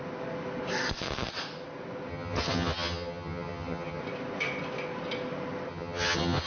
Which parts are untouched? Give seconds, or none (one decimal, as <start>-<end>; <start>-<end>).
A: 0.0-2.1; 4.0-5.7